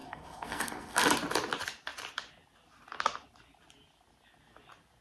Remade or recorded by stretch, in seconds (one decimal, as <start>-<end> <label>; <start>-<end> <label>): 0.0-1.1 remade; 1.1-5.0 recorded